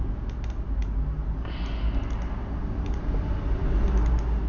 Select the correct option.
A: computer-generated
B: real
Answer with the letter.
B